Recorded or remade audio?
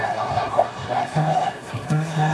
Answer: remade